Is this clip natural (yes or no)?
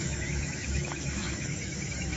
no